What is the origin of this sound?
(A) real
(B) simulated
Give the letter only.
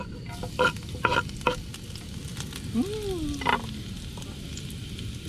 A